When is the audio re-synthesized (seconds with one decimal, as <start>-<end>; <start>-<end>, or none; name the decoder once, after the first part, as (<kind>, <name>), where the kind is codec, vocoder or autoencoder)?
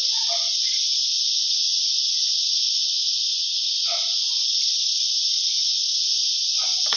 3.0-7.0 (vocoder, Vocos)